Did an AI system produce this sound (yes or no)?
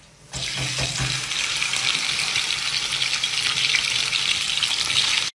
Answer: no